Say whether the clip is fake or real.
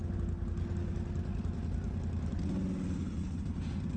real